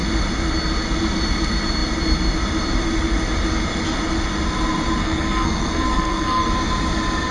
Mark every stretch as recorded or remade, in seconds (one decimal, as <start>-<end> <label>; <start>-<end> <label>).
0.0-5.0 recorded; 5.0-6.5 remade; 6.5-7.3 recorded